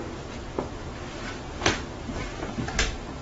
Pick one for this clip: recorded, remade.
remade